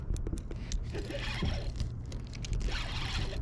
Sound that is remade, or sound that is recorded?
recorded